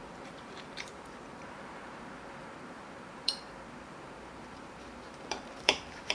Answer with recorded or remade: remade